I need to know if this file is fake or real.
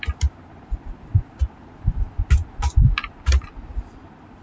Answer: real